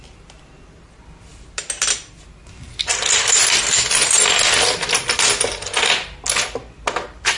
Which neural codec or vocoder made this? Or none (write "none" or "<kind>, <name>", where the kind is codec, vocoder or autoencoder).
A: none